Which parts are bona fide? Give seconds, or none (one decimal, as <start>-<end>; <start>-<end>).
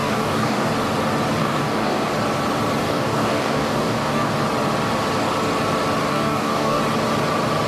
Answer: 0.7-1.4; 2.1-2.8; 4.3-6.1; 6.8-7.7